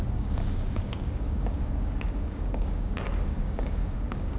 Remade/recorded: remade